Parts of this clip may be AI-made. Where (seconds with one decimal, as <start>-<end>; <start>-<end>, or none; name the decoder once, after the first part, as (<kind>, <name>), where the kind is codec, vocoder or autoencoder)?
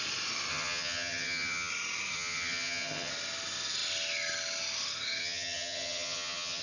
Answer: 0.5-1.7 (vocoder, HiFi-GAN); 2.1-3.1; 5.2-6.6